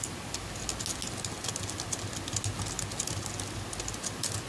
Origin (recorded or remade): recorded